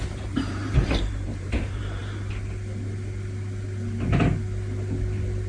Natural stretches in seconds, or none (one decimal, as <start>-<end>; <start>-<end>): 2.0-5.5